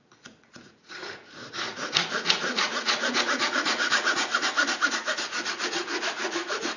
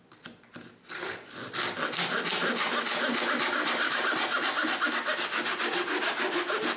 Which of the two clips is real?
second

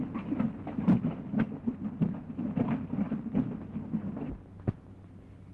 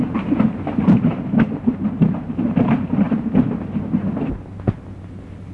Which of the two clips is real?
first